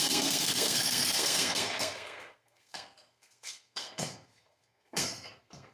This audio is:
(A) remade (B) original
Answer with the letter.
A